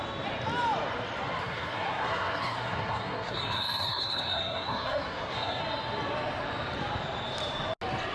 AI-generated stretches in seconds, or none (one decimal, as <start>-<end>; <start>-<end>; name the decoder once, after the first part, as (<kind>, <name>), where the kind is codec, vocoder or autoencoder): 1.4-5.6 (codec, SNAC)

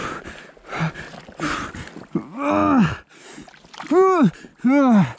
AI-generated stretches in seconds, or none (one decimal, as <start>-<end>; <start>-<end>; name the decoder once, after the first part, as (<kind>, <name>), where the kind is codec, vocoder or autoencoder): none

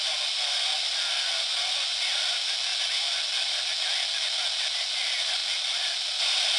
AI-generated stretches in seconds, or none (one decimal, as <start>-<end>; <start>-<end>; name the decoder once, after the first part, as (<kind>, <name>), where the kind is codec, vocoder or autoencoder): none

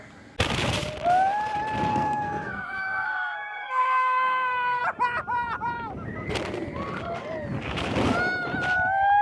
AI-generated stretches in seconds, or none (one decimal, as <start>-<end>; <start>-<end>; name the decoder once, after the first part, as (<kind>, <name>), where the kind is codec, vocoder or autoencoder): 1.9-4.8 (codec, SNAC)

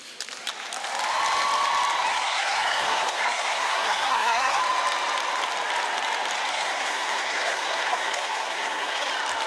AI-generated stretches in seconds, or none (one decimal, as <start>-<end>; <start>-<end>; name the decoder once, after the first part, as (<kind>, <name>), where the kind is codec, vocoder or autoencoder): 2.1-4.6 (codec, SNAC); 6.5-9.1

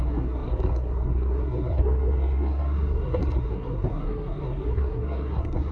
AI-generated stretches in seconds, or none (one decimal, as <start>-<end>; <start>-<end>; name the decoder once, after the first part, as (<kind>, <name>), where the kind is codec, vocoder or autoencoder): 0.0-5.7 (codec, SNAC)

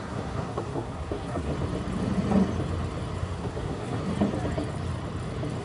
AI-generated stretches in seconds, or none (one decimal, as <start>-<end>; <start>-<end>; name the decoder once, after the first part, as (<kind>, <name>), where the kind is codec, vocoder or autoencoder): 0.0-1.5 (codec, SNAC); 3.2-4.0

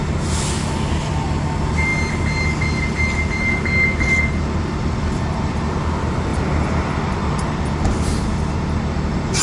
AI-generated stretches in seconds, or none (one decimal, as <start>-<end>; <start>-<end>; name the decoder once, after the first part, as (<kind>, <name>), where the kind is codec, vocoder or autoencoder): none